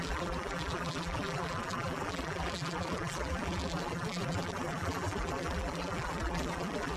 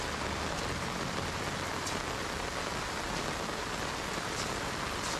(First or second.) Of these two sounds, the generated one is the first